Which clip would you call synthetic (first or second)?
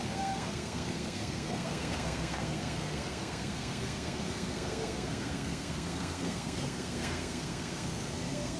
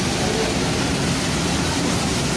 first